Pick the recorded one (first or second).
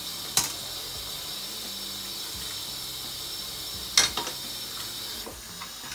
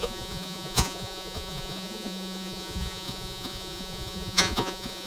first